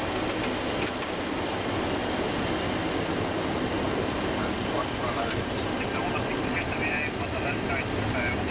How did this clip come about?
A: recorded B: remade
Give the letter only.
A